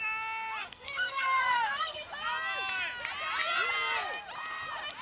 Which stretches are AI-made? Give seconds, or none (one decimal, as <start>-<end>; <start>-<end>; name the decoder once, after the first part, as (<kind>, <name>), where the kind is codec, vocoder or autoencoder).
0.6-2.0 (codec, SNAC)